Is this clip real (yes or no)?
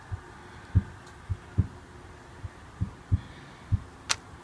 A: yes